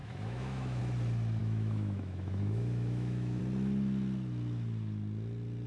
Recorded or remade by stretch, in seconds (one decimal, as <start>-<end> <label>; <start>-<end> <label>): 0.0-0.8 remade; 0.8-1.4 recorded; 1.4-3.4 remade; 3.4-5.7 recorded